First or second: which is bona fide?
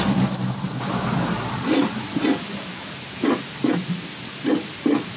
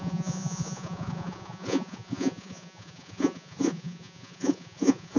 first